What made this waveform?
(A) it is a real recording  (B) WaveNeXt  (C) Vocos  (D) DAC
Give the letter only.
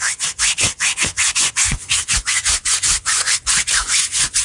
C